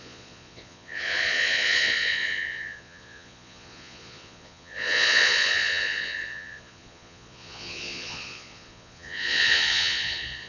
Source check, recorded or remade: remade